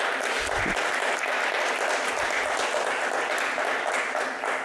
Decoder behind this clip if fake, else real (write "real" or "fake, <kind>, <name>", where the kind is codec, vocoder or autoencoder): real